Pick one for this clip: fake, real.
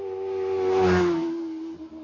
real